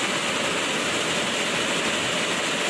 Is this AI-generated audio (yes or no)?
no